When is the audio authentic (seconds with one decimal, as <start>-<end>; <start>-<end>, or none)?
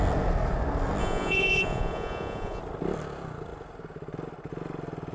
0.0-1.0; 2.6-5.1